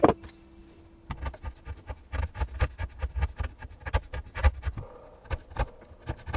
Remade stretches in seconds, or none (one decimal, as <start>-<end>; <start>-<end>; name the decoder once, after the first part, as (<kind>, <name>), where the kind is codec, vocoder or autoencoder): none